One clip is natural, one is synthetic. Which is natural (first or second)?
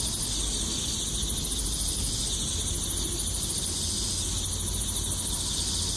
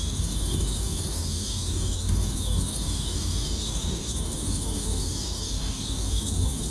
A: first